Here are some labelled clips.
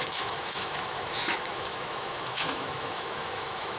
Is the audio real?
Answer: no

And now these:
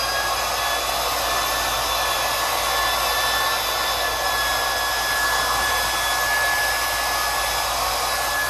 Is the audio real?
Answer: yes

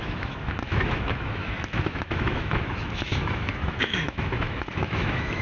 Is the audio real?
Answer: no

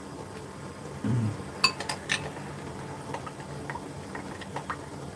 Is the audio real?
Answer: yes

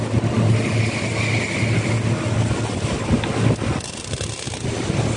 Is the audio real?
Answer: yes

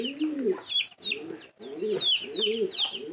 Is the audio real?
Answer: yes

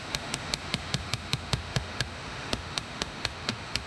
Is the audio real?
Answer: no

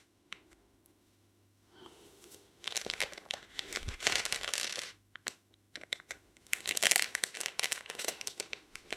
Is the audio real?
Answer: no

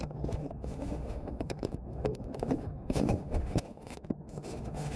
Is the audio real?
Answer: no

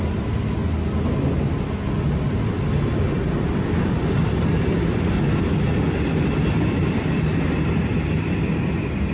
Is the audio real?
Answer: yes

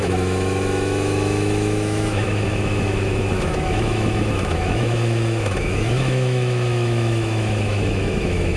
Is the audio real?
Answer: no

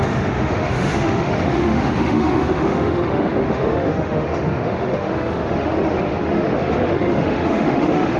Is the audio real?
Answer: no